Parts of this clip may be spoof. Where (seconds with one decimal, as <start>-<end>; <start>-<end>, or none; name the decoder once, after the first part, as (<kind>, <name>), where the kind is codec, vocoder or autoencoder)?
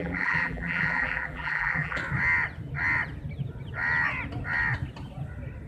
0.0-2.0 (vocoder, BigVGAN v2)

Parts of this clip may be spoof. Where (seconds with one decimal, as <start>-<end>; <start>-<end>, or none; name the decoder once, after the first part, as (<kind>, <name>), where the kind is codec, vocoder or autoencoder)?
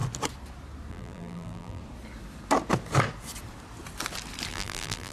0.9-1.8 (vocoder, BigVGAN v2); 4.5-5.1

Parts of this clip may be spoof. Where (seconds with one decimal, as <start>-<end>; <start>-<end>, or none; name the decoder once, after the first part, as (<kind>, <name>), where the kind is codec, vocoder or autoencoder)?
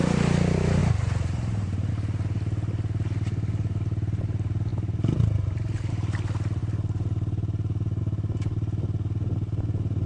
0.8-1.9 (vocoder, BigVGAN v2)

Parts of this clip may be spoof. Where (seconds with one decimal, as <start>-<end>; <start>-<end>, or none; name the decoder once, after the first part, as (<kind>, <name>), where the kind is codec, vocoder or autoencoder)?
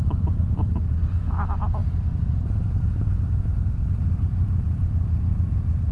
0.0-1.8 (vocoder, BigVGAN v2); 2.8-5.9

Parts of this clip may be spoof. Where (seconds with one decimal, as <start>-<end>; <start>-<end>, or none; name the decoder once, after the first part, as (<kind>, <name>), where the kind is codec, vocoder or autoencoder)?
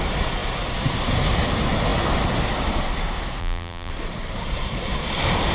3.4-3.9 (vocoder, BigVGAN v2)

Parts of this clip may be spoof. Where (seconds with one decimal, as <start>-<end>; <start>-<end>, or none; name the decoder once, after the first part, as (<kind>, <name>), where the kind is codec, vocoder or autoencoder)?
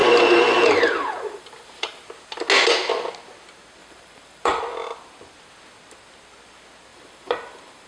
0.0-2.0 (vocoder, BigVGAN v2); 3.8-4.6; 6.9-7.9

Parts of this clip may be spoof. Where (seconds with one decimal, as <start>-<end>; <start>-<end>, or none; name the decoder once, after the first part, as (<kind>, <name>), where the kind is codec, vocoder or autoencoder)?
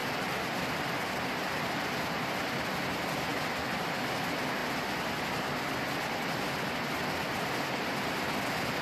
0.0-2.7 (vocoder, BigVGAN v2); 3.3-4.0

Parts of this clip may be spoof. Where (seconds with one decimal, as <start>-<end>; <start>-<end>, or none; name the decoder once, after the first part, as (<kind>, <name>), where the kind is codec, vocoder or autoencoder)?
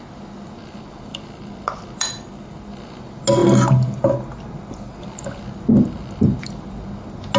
1.1-2.6 (vocoder, BigVGAN v2)